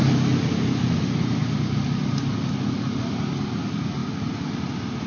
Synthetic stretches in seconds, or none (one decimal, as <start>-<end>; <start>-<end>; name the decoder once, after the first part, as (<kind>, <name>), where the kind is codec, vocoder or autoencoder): 4.0-4.6 (vocoder, BigVGAN v2)

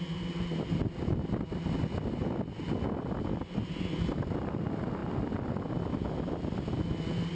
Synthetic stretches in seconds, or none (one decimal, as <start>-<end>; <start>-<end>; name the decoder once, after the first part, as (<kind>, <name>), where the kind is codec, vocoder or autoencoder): none

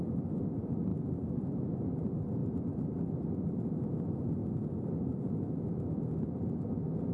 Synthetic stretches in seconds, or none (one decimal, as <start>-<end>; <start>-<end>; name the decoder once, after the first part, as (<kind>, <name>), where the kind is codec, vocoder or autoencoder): 4.4-5.3 (vocoder, BigVGAN v2)

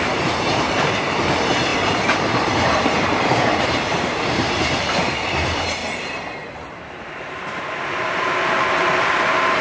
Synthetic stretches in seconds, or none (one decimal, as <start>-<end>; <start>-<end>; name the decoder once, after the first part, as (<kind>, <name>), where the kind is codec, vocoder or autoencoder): 0.0-5.8 (vocoder, BigVGAN v2); 6.5-9.6

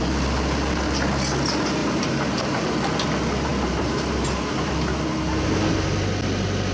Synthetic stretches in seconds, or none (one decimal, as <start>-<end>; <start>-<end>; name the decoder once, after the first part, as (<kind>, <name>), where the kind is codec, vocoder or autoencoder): 1.8-2.6 (vocoder, BigVGAN v2); 3.5-4.7